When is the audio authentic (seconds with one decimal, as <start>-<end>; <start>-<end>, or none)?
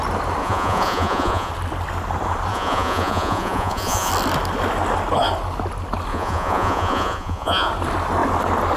0.0-0.4; 1.5-2.5; 4.1-6.1; 7.7-8.8